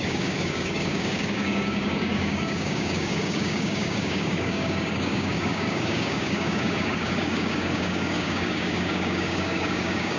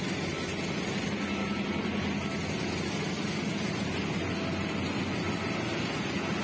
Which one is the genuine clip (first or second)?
second